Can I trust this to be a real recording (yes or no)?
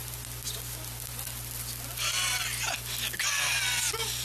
yes